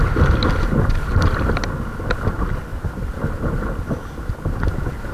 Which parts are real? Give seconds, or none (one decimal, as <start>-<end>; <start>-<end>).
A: 0.0-5.1